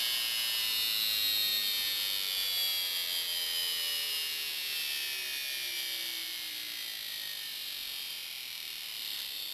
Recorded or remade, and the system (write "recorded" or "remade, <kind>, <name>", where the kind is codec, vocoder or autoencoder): recorded